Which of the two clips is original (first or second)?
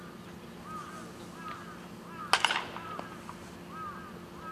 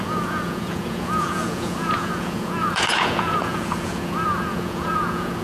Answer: first